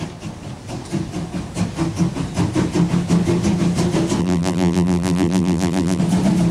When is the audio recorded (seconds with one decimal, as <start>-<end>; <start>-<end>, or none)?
0.0-4.2; 6.0-6.5